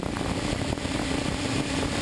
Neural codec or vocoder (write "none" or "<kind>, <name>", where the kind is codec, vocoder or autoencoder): none